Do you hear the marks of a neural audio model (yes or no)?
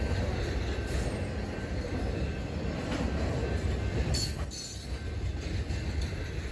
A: no